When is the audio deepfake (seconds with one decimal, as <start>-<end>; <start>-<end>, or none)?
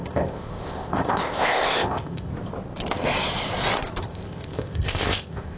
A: 0.0-2.3; 4.0-5.6